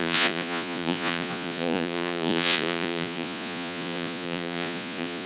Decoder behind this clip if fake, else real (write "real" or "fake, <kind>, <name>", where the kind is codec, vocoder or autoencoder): fake, vocoder, Vocos